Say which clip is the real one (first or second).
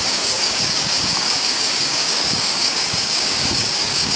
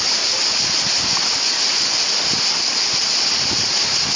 second